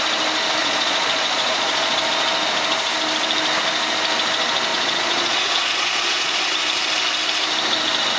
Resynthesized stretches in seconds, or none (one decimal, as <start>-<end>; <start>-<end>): 0.6-2.0; 4.7-6.4